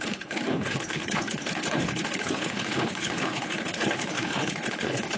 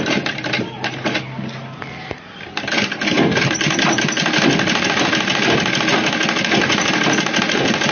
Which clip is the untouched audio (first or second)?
second